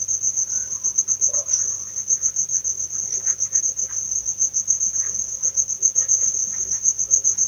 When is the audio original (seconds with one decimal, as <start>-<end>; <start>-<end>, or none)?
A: 0.0-7.5